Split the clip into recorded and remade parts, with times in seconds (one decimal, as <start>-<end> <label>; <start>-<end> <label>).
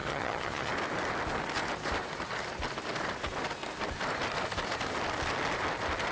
0.0-0.7 remade; 0.7-6.1 recorded